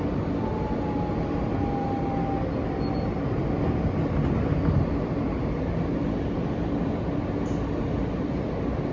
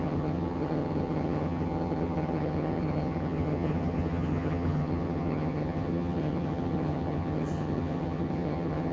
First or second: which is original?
first